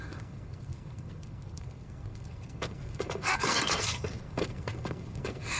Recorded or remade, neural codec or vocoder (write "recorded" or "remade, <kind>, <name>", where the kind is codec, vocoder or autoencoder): remade, codec, SNAC